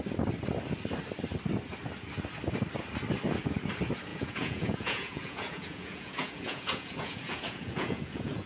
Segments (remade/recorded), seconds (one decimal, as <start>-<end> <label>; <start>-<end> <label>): 0.0-4.1 recorded; 4.1-8.5 remade